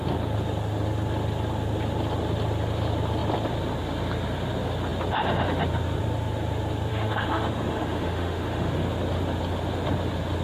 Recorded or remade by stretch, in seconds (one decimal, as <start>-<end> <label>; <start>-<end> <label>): 0.0-6.9 recorded; 6.9-8.7 remade; 8.7-10.4 recorded